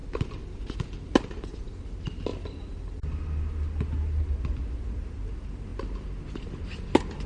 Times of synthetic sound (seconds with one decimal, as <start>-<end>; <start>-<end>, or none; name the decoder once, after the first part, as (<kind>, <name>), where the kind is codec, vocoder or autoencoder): none